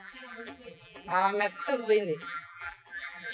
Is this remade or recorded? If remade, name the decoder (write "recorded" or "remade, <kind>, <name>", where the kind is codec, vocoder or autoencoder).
remade, vocoder, BigVGAN v2